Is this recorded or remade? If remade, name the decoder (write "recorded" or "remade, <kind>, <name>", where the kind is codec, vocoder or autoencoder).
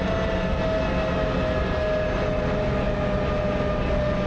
recorded